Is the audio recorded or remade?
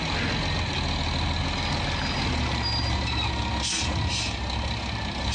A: recorded